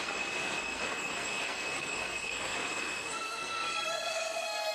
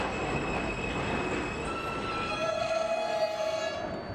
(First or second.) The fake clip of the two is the first